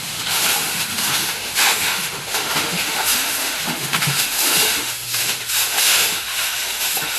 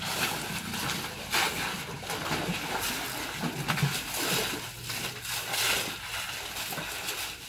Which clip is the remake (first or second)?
first